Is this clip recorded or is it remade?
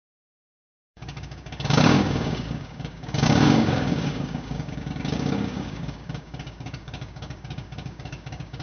remade